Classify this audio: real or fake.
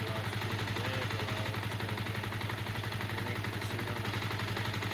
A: real